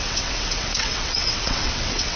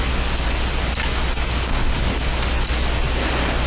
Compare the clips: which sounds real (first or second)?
second